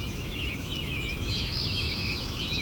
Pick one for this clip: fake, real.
fake